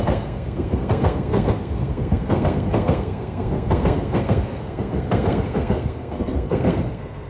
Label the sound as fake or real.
fake